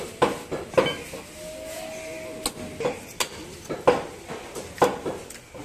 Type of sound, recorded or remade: recorded